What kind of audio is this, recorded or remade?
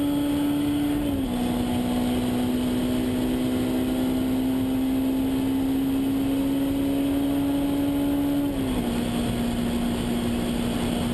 recorded